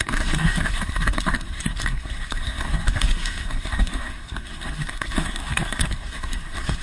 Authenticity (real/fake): fake